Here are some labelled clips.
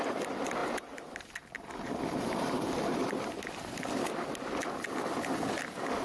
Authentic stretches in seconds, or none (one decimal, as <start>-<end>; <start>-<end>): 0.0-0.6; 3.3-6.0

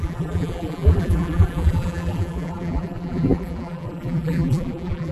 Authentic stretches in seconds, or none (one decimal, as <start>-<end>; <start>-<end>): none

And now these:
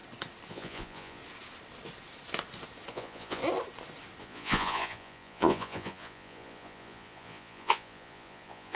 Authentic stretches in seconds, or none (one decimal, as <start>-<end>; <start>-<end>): 0.0-0.5; 1.2-2.9; 3.4-4.2

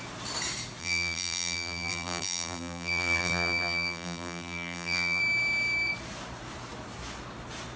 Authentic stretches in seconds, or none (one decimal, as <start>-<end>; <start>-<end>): 0.0-0.8; 5.2-7.8